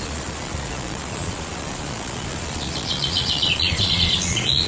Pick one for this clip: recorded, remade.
remade